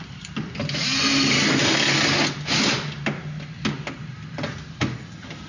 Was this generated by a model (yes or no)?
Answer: no